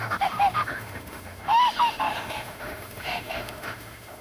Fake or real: fake